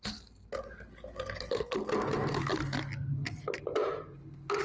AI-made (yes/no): no